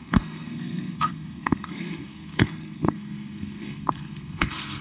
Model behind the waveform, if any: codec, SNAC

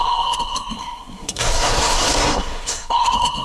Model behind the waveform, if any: codec, SNAC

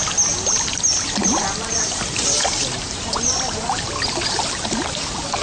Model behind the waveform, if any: none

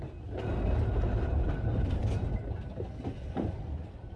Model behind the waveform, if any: none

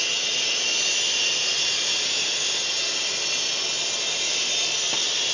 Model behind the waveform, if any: none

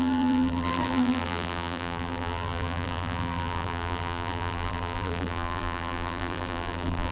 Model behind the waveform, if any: vocoder, BigVGAN v2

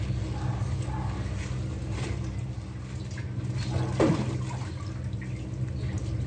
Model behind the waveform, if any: none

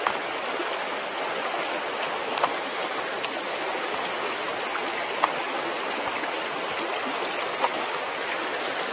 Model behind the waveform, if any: none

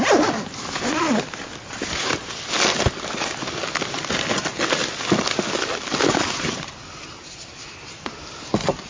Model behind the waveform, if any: none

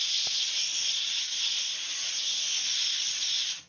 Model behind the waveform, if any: none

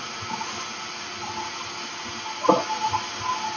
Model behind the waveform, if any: none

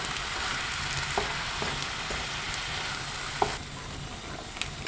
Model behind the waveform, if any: none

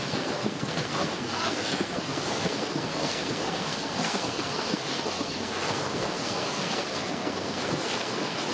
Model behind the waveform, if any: codec, SNAC